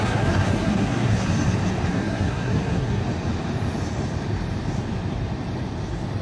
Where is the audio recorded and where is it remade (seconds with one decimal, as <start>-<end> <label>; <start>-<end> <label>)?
0.0-1.3 remade; 1.3-1.9 recorded; 1.9-3.0 remade; 3.0-6.2 recorded